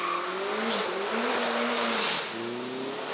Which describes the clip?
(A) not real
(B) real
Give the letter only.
B